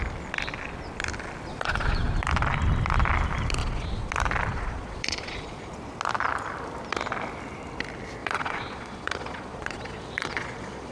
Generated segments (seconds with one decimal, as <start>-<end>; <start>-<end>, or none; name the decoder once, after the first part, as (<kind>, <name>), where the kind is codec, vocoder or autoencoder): 1.5-2.1 (vocoder, Vocos); 3.6-4.1; 4.5-5.7; 8.2-10.9